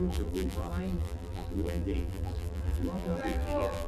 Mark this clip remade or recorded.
remade